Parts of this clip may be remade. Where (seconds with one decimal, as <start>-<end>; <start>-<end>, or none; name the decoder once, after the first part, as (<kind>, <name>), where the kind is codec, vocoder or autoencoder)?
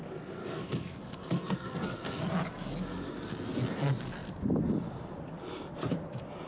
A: 0.4-2.2 (codec, SNAC)